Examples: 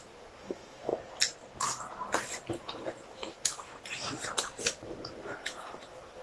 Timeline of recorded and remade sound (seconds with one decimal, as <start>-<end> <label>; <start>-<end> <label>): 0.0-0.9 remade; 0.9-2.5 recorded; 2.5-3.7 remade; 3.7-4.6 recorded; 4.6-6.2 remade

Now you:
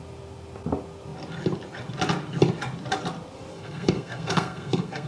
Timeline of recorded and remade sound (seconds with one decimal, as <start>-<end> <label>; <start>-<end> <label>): 0.0-3.5 recorded; 3.5-5.1 remade

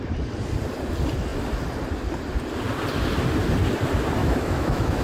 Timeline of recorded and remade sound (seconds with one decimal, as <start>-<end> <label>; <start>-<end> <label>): 0.0-4.2 recorded; 4.2-5.0 remade

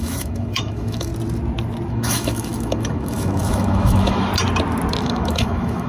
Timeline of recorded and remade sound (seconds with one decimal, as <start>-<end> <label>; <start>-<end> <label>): 0.0-1.1 remade; 1.1-1.9 recorded; 1.9-4.3 remade; 4.3-5.0 recorded; 5.0-5.9 remade

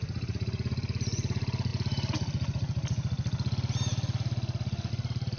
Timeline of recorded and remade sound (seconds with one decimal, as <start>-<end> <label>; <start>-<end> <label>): 0.0-5.4 recorded